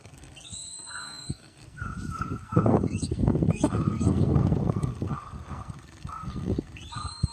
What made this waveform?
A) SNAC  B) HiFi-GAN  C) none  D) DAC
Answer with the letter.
A